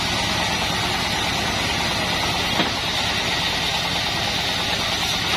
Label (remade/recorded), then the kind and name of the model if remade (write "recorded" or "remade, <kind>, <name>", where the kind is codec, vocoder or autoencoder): recorded